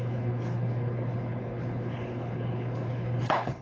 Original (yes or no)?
no